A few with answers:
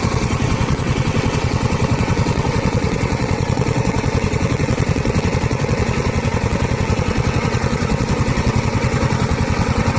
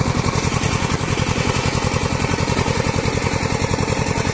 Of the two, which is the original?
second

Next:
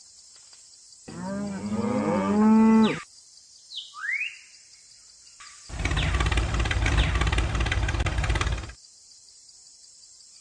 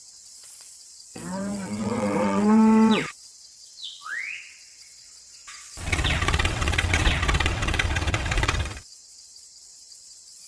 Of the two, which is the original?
first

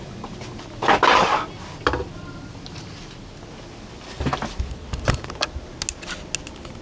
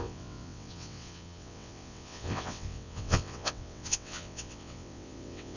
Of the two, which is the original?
first